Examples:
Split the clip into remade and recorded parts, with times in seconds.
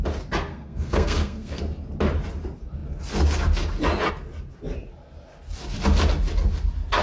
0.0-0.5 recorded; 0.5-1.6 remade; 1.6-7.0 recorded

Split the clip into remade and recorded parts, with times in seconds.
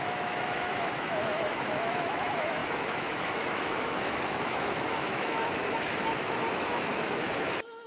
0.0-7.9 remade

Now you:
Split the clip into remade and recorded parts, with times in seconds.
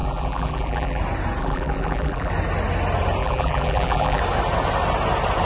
0.0-1.0 remade; 1.0-1.4 recorded; 1.4-2.3 remade; 2.3-3.2 recorded; 3.2-4.2 remade; 4.2-5.5 recorded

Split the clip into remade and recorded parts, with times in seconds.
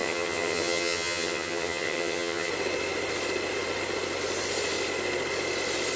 0.0-2.5 remade; 2.5-6.0 recorded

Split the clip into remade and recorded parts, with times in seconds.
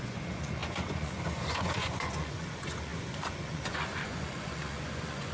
0.0-5.3 remade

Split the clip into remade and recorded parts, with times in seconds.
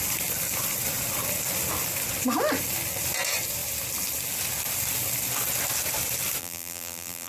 0.0-6.4 recorded; 6.4-7.3 remade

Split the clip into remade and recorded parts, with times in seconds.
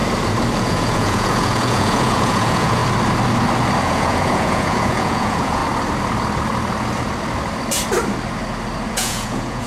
0.0-0.6 recorded; 0.6-2.8 remade; 2.8-3.8 recorded; 3.8-5.6 remade; 5.6-8.9 recorded; 8.9-9.7 remade